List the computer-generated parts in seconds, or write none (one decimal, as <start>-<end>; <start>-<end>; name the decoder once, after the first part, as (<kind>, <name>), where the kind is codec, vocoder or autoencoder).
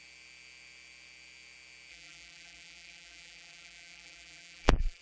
1.9-5.0 (vocoder, BigVGAN v2)